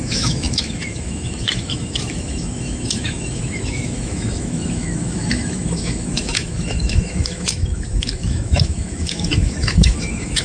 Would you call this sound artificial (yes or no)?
yes